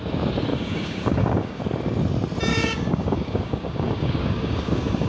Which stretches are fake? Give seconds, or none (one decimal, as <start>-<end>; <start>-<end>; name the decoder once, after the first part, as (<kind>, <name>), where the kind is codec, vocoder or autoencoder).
0.5-1.6 (codec, DAC); 2.5-5.1